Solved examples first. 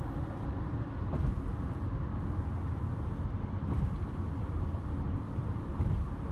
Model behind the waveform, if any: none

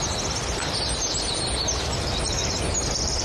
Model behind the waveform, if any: none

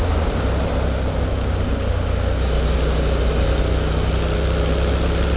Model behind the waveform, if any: none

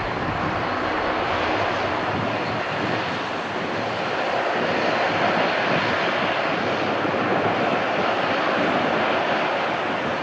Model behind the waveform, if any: none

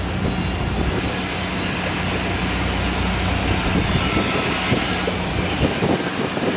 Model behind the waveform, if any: none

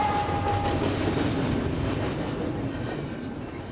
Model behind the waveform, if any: none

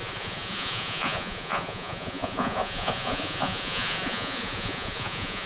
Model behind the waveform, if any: vocoder, Vocos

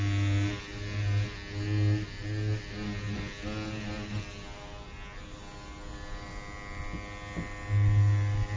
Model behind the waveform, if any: none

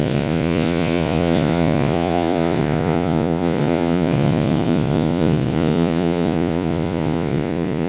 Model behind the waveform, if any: vocoder, Vocos